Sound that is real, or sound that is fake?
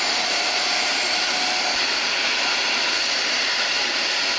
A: real